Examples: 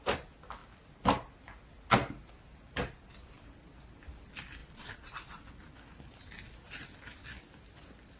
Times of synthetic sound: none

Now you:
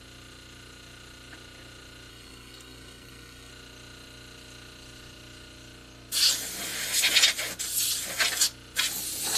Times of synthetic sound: 2.1-3.5 (codec, SNAC)

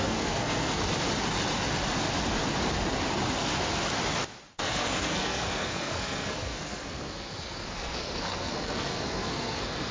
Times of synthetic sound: 0.0-0.8 (codec, SNAC); 4.6-9.9

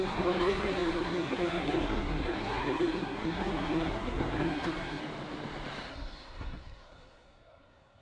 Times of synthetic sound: 0.0-5.0 (codec, SNAC); 5.9-8.0

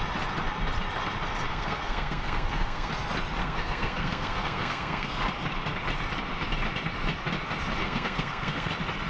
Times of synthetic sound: 1.5-2.9 (codec, SNAC); 3.4-5.2; 7.8-8.7

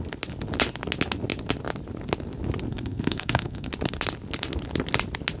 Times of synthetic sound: 2.7-3.7 (codec, SNAC)

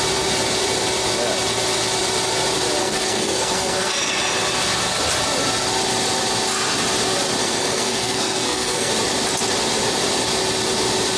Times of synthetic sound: 2.8-4.2 (codec, SNAC); 7.4-8.9